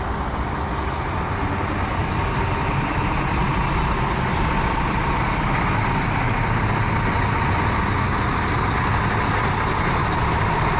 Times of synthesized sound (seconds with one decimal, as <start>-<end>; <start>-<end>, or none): 10.0-10.8